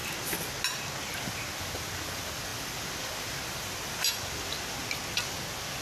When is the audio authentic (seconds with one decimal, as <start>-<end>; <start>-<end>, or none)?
0.0-5.8